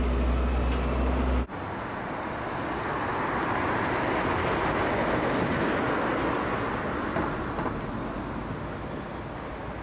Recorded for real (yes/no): yes